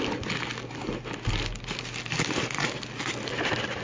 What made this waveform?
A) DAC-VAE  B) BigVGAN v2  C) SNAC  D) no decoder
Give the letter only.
D